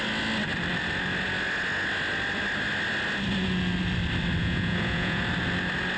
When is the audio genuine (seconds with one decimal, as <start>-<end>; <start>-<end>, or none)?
0.0-4.4; 5.2-6.0